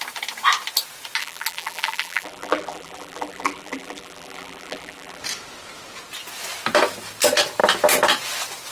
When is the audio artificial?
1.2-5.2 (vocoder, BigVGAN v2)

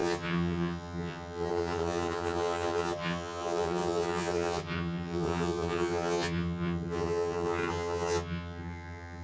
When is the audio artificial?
0.0-9.2 (vocoder, HiFi-GAN)

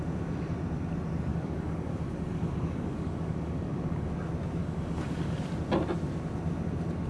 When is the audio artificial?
1.3-4.1 (codec, DAC); 4.6-5.4

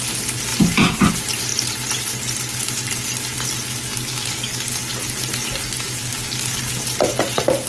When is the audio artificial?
3.9-4.8 (codec, DAC); 6.1-6.6

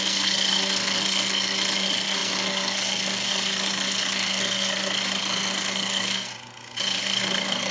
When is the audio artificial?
0.0-6.3 (codec, SNAC); 7.0-7.7

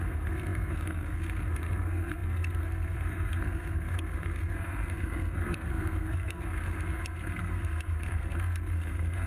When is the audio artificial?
0.0-9.3 (codec, SNAC)

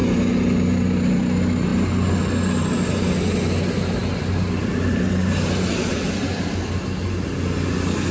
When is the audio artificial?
none

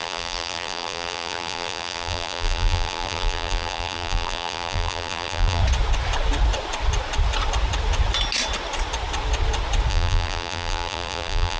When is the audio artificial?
0.0-5.6 (vocoder, BigVGAN v2); 9.9-11.6